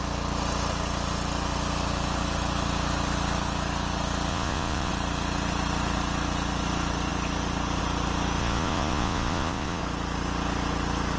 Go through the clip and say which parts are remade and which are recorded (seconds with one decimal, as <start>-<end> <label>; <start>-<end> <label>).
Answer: 0.0-4.3 recorded; 4.3-4.9 remade; 4.9-8.4 recorded; 8.4-9.8 remade; 9.8-11.2 recorded